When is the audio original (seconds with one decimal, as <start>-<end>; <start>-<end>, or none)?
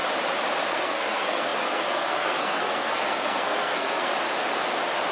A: 0.0-0.7; 4.1-5.1